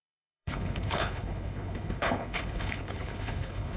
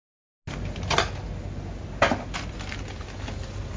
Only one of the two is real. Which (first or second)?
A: second